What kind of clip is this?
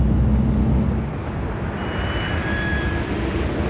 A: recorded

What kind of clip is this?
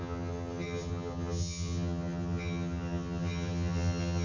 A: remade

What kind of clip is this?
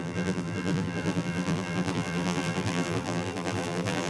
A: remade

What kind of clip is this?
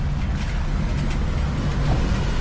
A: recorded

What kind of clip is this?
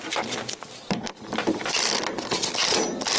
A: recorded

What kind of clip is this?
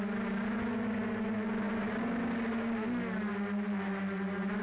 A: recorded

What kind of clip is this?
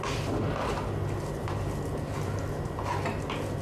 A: recorded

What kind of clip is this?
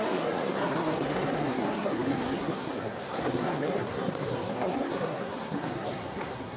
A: remade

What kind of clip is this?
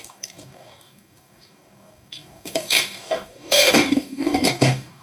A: remade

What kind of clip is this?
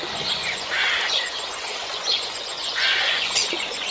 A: remade